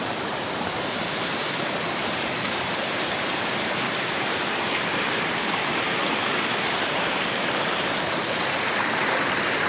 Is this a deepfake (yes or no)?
yes